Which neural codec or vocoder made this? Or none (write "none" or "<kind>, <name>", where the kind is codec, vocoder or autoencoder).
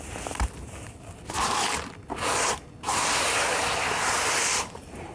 none